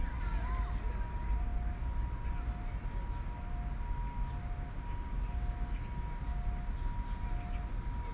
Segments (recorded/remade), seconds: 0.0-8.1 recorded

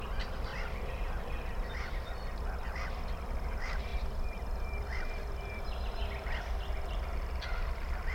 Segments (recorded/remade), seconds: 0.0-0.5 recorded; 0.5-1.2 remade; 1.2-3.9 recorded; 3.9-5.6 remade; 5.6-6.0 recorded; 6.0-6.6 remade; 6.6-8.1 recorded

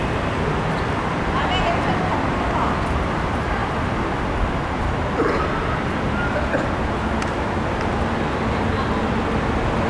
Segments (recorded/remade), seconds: 0.0-9.9 recorded

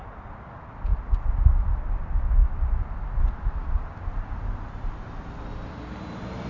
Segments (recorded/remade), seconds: 0.0-6.5 recorded

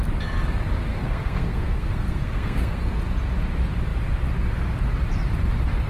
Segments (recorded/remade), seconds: 0.0-0.9 recorded; 0.9-2.9 remade; 2.9-5.9 recorded

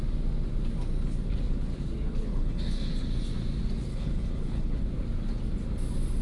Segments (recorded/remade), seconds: 0.0-2.3 recorded; 2.3-2.9 remade; 2.9-3.9 recorded; 3.9-4.8 remade; 4.8-6.2 recorded